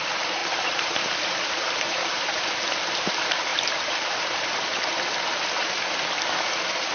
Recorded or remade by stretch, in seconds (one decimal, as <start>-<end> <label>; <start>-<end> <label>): 0.0-0.4 recorded; 0.4-2.6 remade; 2.6-3.5 recorded; 3.5-4.5 remade; 4.5-6.9 recorded